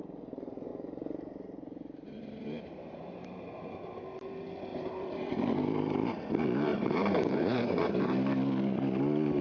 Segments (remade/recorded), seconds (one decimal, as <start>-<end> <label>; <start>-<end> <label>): 0.0-0.7 recorded; 0.7-4.0 remade; 4.0-4.7 recorded; 4.7-6.3 remade; 6.3-6.7 recorded; 6.7-8.0 remade; 8.0-9.4 recorded